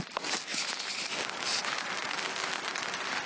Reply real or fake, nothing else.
real